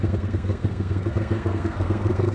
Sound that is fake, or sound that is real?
fake